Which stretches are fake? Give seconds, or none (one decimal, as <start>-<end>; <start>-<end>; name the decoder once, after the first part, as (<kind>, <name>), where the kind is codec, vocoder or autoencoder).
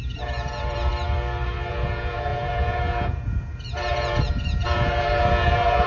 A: 0.0-0.9 (vocoder, Vocos); 1.7-5.9